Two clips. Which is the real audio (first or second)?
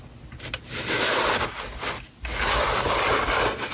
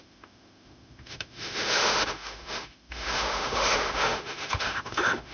first